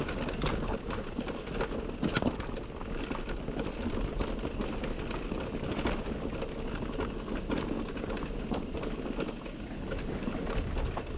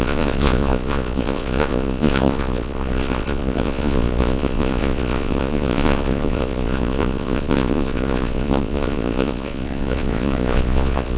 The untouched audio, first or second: first